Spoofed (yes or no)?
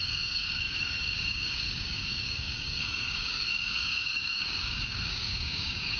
yes